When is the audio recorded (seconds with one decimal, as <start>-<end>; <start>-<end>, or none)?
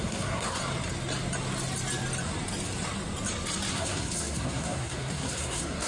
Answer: 0.6-3.7